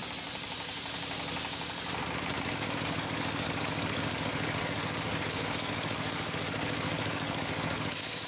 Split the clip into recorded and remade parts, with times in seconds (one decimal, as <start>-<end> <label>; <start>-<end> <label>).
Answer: 0.0-2.5 recorded; 2.5-8.3 remade